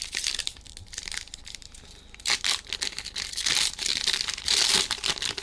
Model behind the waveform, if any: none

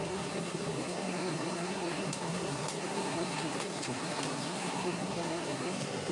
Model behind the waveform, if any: codec, SNAC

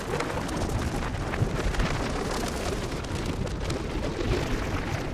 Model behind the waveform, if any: none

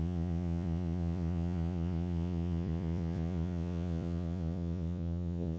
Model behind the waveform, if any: vocoder, Vocos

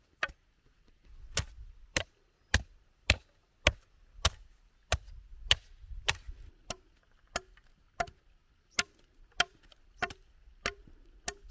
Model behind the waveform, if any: none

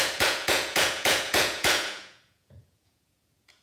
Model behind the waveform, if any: vocoder, Vocos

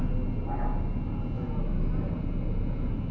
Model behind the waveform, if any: none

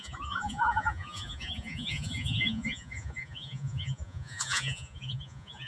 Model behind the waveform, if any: vocoder, Vocos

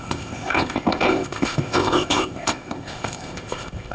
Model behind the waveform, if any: codec, ZipCodec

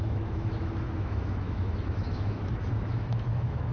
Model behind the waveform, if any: autoencoder, DAC-VAE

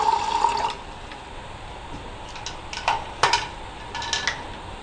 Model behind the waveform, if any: none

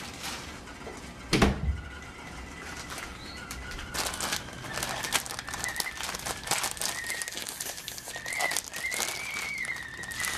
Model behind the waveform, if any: none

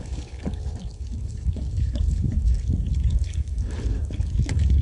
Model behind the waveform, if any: codec, DAC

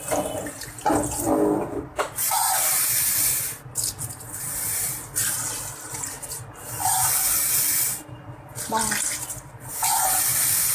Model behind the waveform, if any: none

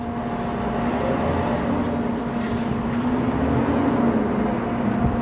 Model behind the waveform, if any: none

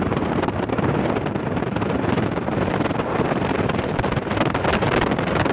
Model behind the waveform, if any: vocoder, BigVGAN v2